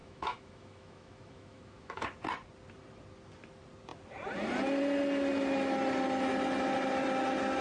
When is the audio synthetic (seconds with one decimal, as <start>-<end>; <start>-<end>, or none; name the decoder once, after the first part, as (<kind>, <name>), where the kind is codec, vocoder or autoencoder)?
0.0-2.0 (autoencoder, DAC-VAE)